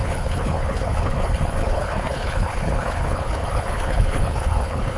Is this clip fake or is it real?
fake